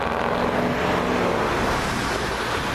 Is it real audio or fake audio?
real